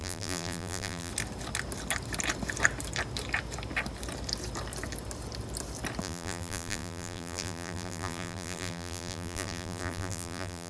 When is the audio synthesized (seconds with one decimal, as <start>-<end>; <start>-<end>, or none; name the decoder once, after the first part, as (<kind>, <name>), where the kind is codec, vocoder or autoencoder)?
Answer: 0.0-1.1 (vocoder, BigVGAN v2); 6.0-10.7